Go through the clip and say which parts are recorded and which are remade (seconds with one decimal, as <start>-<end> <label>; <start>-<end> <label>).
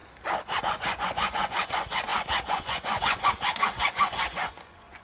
0.0-0.6 recorded; 0.6-5.0 remade